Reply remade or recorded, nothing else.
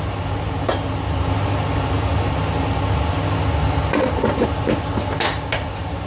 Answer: recorded